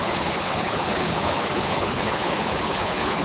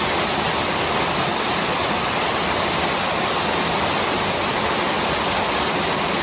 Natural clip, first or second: second